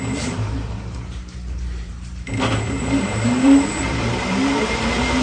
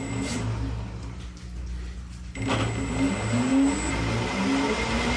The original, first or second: second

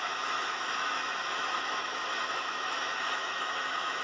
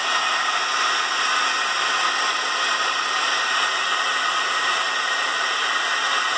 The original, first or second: second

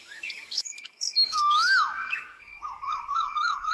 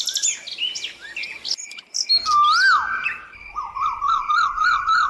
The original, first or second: second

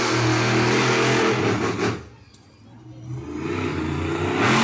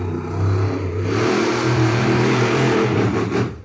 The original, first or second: first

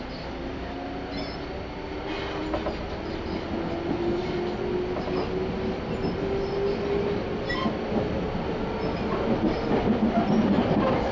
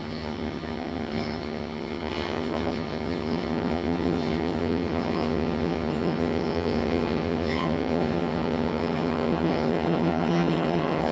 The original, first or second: first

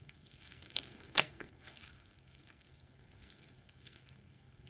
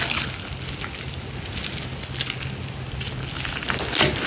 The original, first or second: second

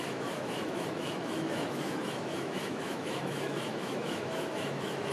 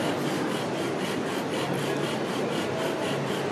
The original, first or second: second